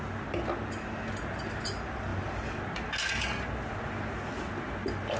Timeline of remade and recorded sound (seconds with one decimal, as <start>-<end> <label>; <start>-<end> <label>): 0.0-5.2 recorded